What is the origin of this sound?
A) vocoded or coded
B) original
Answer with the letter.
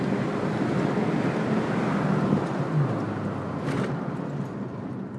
B